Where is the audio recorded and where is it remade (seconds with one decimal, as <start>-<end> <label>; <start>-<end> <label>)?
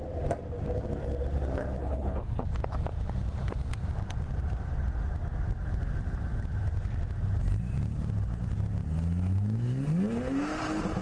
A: 0.0-1.8 recorded; 1.8-2.4 remade; 2.4-11.0 recorded